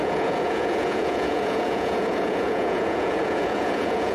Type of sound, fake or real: fake